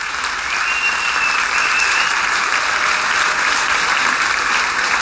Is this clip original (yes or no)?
yes